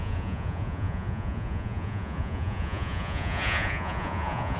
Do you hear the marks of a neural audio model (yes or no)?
yes